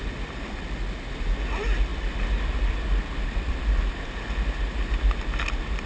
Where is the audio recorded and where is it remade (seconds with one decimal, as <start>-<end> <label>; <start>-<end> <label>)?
0.0-5.9 recorded